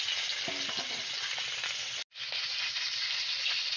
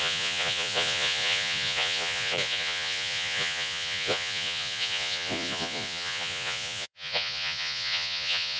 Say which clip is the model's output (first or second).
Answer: second